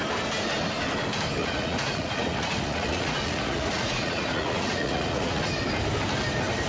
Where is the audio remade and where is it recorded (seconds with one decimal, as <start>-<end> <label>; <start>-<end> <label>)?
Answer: 0.0-1.4 recorded; 1.4-5.4 remade; 5.4-6.7 recorded